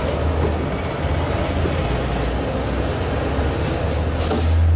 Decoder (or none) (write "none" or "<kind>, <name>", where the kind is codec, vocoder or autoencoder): none